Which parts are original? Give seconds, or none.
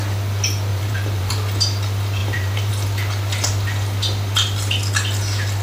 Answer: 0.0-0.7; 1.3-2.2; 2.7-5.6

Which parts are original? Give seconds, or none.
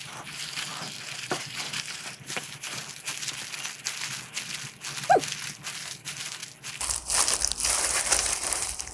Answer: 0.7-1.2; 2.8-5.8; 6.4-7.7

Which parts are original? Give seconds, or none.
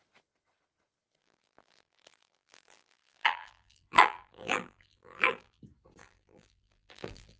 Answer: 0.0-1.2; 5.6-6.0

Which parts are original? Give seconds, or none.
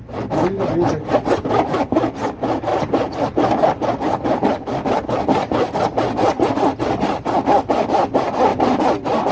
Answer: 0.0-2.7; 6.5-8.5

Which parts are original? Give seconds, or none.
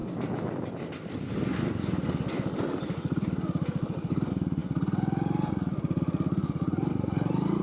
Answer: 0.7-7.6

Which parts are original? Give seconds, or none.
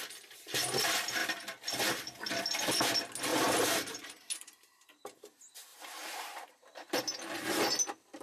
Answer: 0.0-3.3; 5.2-5.7; 7.0-8.2